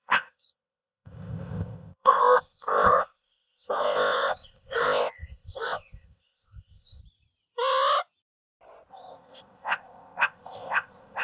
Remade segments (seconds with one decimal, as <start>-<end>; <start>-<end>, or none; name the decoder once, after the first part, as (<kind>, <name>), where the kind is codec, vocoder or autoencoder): 0.0-7.0 (codec, ZipCodec); 8.9-11.2